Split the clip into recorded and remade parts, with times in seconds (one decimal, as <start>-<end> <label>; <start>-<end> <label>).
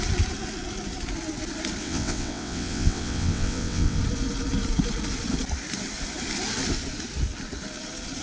0.0-1.8 recorded; 1.8-4.0 remade; 4.0-8.2 recorded